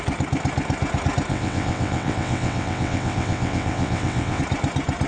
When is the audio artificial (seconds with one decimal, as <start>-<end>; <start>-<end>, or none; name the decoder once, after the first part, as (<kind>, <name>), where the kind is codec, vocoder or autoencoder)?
1.3-4.4 (vocoder, WaveNeXt)